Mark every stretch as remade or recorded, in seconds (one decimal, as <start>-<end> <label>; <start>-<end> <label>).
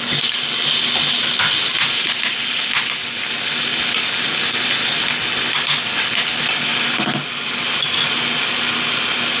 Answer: 0.0-9.4 recorded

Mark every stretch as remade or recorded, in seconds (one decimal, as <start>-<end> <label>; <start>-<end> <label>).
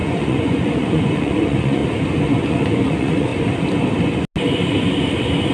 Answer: 0.0-1.8 remade; 1.8-2.5 recorded; 2.5-3.3 remade; 3.3-5.5 recorded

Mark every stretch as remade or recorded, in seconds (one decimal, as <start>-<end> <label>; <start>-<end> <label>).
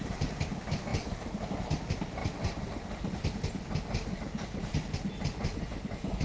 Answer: 0.0-6.2 recorded